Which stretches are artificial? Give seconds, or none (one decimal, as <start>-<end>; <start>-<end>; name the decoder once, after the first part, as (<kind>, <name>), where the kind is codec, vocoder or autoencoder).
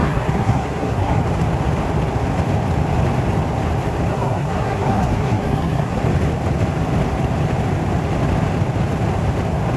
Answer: 0.0-1.2 (codec, SNAC); 4.1-6.0